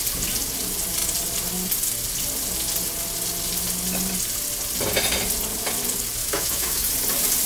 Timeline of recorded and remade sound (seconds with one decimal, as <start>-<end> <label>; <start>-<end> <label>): 0.0-6.2 recorded; 6.2-6.9 remade; 6.9-7.5 recorded

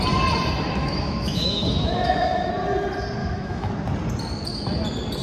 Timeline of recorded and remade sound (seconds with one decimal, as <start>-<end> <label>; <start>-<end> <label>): 0.0-0.8 recorded; 0.8-2.5 remade; 2.5-3.2 recorded; 3.2-3.7 remade; 3.7-5.2 recorded

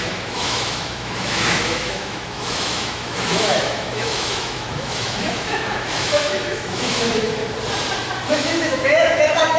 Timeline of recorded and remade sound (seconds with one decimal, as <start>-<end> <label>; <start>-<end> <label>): 0.0-7.4 remade; 7.4-8.3 recorded; 8.3-9.6 remade

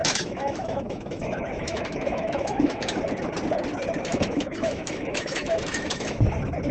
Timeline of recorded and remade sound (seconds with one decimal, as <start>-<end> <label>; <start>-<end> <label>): 0.0-3.0 remade; 3.0-4.1 recorded; 4.1-6.2 remade; 6.2-6.7 recorded

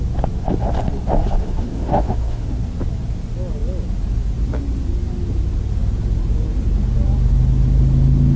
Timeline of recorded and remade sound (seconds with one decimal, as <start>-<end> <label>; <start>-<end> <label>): 0.0-1.4 recorded; 1.4-2.5 remade; 2.5-8.4 recorded

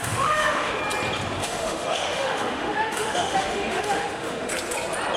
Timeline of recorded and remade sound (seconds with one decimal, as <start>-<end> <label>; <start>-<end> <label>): 0.0-0.8 remade; 0.8-1.4 recorded; 1.4-4.5 remade; 4.5-5.2 recorded

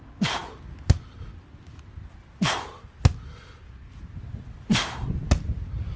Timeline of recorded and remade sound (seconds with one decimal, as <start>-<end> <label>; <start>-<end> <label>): 0.0-6.0 recorded

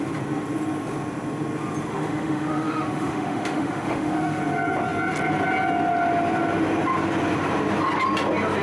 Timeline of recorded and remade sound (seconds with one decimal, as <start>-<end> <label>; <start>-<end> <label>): 0.0-1.9 recorded; 1.9-4.4 remade; 4.4-8.6 recorded